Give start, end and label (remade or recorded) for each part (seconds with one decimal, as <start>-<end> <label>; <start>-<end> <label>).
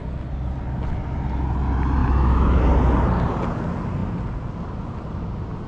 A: 0.0-2.0 recorded; 2.0-2.6 remade; 2.6-5.7 recorded